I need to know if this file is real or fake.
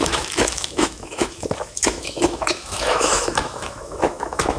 fake